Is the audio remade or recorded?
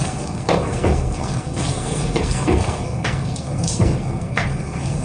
remade